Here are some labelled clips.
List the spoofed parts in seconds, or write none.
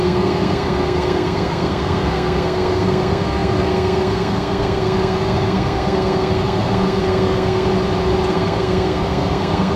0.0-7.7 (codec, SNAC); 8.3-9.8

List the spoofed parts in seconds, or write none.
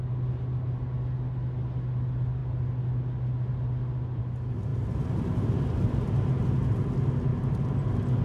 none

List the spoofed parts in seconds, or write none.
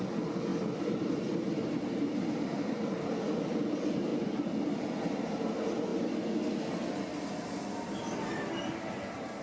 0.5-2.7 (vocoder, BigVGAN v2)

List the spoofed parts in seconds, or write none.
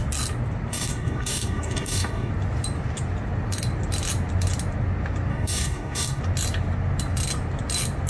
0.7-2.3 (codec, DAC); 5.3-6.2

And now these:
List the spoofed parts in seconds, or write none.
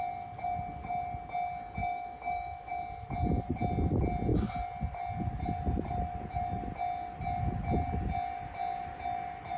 1.8-2.7 (autoencoder, DAC-VAE)